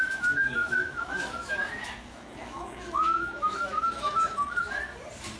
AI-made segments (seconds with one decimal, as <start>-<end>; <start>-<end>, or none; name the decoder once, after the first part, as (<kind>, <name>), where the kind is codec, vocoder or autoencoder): 0.0-4.6 (autoencoder, DAC-VAE)